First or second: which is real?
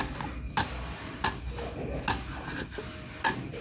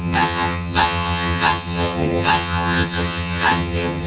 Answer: first